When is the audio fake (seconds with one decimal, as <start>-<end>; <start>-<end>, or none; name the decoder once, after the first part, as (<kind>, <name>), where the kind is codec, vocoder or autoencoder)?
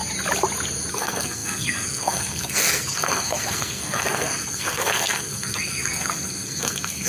0.9-7.1 (codec, SNAC)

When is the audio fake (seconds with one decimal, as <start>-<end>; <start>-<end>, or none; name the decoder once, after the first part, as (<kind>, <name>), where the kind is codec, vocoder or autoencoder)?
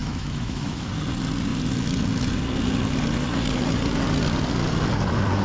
0.0-0.9 (autoencoder, DAC-VAE)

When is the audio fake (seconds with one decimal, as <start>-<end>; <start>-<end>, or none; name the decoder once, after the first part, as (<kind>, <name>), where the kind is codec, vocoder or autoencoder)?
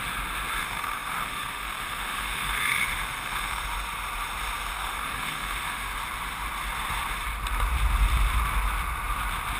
0.6-3.6 (autoencoder, DAC-VAE); 4.7-5.9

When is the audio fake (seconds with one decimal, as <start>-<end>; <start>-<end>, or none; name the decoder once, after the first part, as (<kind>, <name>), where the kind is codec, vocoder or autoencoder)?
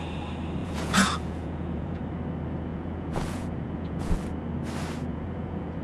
0.6-2.0 (vocoder, Vocos); 2.7-4.2; 5.1-5.8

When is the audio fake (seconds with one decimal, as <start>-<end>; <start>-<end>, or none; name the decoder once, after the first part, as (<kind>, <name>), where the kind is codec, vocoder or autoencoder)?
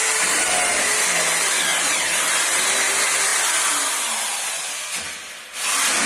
1.7-2.6 (vocoder, BigVGAN v2)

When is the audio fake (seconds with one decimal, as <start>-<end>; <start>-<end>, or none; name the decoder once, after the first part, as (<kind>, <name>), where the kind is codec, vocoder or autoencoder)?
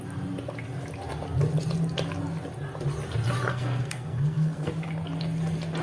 3.5-4.7 (codec, SNAC)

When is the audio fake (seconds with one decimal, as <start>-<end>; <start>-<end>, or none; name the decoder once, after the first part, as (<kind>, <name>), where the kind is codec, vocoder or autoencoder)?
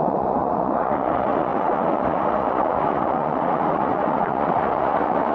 0.0-5.3 (vocoder, Vocos)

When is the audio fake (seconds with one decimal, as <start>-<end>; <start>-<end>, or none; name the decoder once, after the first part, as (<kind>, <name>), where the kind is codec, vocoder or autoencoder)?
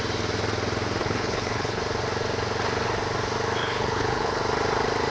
1.0-1.8 (codec, HILCodec); 3.6-4.4